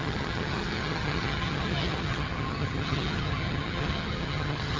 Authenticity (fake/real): fake